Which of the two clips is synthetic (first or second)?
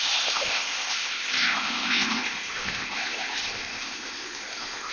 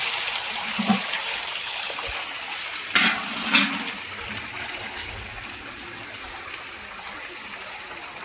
first